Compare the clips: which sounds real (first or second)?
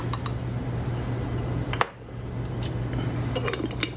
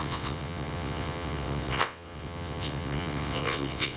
first